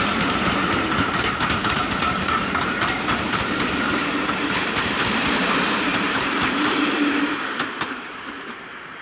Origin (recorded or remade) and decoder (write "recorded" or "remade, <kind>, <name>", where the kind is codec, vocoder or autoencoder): remade, vocoder, BigVGAN v2